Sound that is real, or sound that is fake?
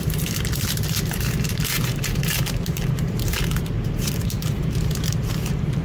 fake